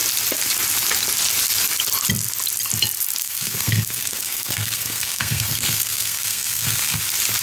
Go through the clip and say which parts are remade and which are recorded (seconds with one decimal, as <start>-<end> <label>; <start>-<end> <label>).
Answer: 0.0-3.2 recorded; 3.2-7.0 remade; 7.0-7.4 recorded